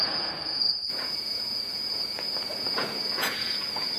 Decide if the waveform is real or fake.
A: fake